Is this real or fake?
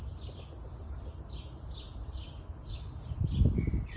real